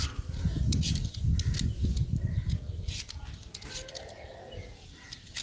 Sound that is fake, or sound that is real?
real